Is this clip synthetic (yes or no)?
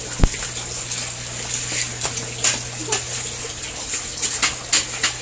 no